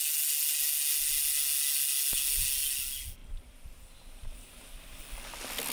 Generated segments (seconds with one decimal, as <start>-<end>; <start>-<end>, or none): 3.2-5.0